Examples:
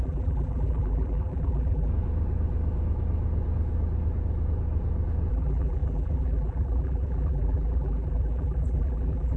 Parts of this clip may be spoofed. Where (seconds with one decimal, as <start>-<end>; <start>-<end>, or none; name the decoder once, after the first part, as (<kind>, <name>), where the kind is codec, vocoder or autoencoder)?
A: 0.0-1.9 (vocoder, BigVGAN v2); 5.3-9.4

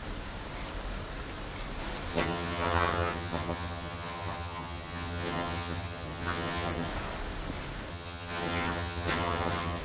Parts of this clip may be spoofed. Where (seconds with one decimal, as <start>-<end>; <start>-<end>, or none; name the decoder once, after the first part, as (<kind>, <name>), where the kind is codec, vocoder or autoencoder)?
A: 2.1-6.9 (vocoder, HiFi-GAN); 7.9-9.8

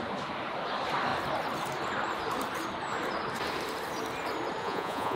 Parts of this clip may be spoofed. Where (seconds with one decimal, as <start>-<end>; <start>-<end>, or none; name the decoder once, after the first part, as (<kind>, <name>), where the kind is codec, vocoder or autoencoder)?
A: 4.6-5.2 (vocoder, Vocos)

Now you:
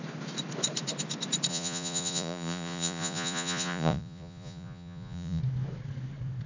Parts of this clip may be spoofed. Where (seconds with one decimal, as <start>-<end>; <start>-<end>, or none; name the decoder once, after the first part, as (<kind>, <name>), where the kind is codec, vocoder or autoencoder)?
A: 1.5-5.4 (vocoder, Vocos)

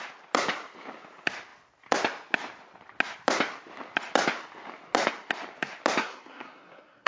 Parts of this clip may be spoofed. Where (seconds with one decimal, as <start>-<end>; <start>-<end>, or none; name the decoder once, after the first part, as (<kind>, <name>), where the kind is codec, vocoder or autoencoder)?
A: 6.0-7.1 (codec, SNAC)

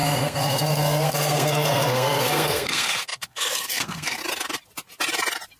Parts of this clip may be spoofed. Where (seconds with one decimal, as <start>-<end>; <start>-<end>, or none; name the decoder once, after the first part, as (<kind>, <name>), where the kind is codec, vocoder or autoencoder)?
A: 0.0-4.2 (codec, SNAC)

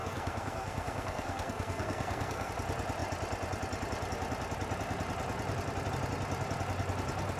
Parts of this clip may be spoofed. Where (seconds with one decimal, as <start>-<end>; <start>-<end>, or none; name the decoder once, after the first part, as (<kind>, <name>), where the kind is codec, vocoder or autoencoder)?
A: 0.0-2.5 (codec, SNAC)

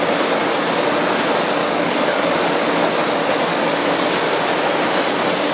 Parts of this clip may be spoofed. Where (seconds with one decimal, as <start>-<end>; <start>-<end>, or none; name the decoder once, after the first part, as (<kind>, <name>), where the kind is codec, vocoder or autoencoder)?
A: 1.6-2.6 (codec, DAC); 3.5-4.2